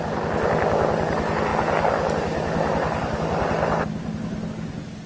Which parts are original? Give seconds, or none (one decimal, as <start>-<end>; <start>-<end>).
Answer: 0.0-5.1